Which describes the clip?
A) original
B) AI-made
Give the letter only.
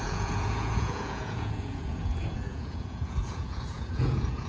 B